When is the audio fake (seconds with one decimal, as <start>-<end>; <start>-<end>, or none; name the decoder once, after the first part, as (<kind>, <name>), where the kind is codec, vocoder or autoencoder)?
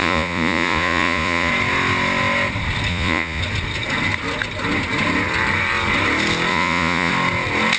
0.0-1.5 (vocoder, Vocos); 2.9-3.4; 6.5-7.1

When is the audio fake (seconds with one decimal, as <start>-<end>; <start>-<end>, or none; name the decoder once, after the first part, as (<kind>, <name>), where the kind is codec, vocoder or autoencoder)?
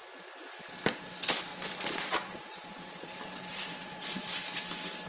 1.5-4.6 (vocoder, Vocos)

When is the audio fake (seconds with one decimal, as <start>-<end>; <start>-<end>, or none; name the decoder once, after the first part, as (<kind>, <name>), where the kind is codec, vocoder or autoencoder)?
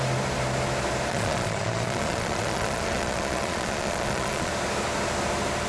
1.1-4.5 (vocoder, Vocos)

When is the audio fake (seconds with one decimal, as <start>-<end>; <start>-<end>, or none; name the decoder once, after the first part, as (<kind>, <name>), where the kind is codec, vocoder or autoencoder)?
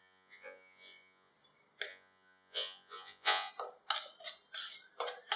0.0-1.3 (vocoder, Vocos); 1.9-3.5